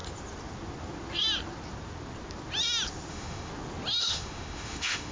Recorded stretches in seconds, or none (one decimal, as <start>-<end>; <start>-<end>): 0.0-3.1; 3.5-4.0